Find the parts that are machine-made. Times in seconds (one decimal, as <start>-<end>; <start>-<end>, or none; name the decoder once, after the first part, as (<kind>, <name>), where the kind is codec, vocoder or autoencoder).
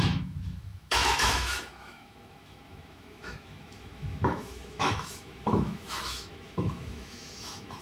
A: 0.0-7.8 (autoencoder, DAC-VAE)